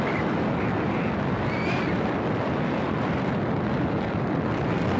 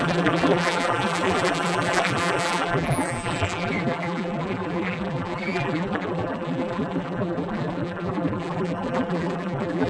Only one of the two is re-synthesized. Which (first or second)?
second